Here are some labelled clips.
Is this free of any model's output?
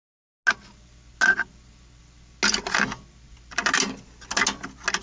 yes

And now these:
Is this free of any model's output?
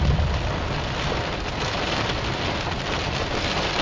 yes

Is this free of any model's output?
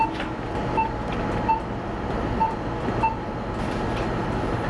yes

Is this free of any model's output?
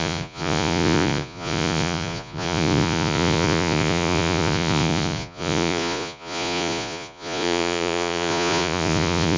no